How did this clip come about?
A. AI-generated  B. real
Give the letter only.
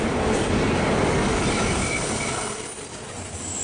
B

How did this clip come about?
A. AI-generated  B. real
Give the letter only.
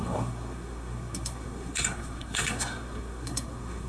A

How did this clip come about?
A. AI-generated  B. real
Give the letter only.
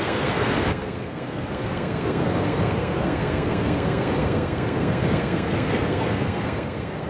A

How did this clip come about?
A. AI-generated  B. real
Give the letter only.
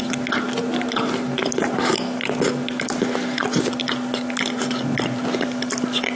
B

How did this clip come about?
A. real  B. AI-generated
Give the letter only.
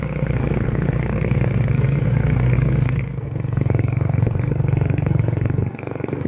B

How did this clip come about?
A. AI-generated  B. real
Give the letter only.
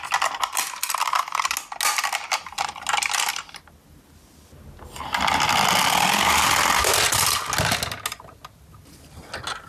B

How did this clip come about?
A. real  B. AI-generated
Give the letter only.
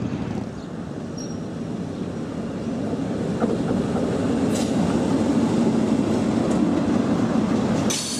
A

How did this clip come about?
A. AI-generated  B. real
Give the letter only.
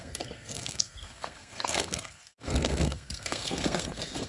A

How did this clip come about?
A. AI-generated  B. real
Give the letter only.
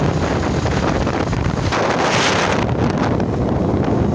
B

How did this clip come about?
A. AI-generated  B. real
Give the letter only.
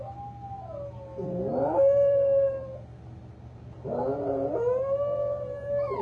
B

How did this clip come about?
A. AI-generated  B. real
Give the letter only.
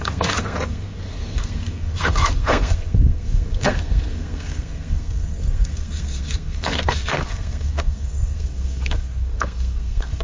A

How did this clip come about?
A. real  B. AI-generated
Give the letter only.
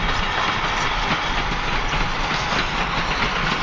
A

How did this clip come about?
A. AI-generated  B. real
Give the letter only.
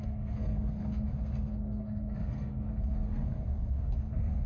A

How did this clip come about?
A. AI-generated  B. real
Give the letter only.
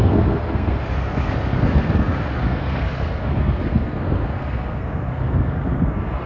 A